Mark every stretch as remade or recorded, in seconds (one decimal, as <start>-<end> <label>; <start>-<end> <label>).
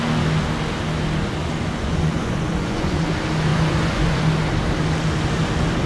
0.0-1.4 recorded; 1.4-3.1 remade; 3.1-3.5 recorded; 3.5-4.2 remade; 4.2-5.9 recorded